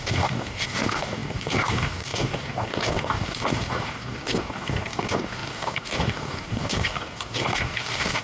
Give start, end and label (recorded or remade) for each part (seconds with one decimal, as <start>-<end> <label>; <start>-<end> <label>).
0.0-8.2 remade